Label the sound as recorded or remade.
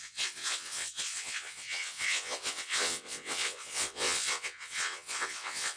remade